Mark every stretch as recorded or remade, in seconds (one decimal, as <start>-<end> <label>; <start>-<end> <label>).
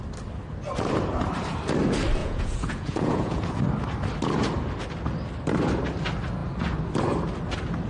0.0-2.2 recorded; 2.2-3.6 remade; 3.6-7.9 recorded